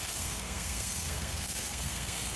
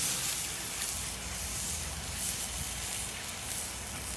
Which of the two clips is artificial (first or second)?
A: first